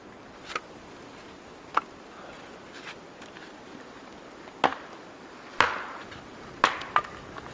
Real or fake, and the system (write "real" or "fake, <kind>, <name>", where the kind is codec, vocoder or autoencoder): real